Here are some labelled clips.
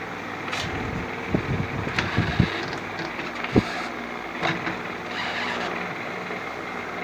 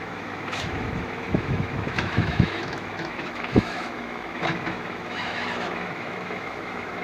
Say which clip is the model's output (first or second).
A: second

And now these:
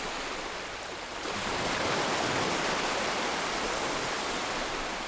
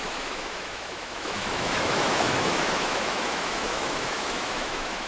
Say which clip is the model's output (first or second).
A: second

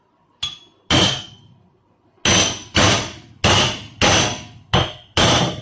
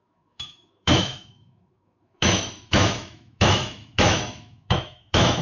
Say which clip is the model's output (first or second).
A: second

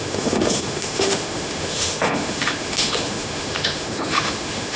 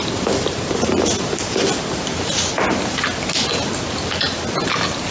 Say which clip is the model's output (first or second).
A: first